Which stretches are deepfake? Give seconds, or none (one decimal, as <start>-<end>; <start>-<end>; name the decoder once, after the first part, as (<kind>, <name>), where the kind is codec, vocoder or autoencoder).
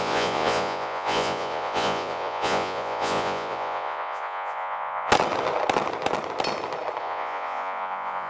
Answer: 0.0-5.1 (vocoder, Vocos); 7.0-8.3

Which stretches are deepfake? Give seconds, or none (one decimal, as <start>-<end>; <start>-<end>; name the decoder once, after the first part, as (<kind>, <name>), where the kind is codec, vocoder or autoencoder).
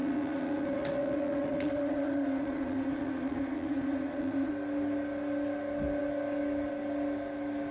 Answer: 0.0-4.5 (vocoder, Vocos)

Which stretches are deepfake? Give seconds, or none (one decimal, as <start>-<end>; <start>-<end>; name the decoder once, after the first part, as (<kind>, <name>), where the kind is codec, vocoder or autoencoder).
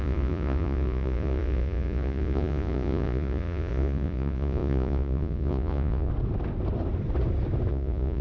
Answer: 0.0-6.1 (vocoder, Vocos); 7.7-8.2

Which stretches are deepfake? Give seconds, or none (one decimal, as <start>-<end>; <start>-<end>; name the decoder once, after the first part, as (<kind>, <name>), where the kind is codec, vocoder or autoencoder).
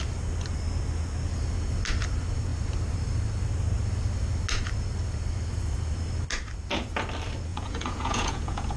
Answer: 7.5-8.8 (vocoder, Vocos)